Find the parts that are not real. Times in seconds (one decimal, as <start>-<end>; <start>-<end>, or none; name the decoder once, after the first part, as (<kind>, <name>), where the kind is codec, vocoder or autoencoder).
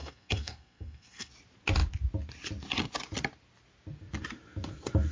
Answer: 0.0-1.3 (codec, SNAC)